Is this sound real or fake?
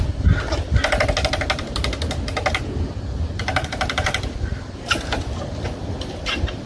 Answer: real